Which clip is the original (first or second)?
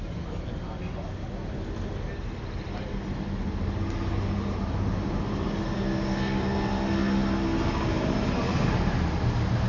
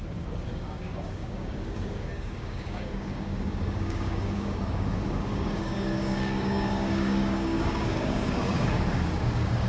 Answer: first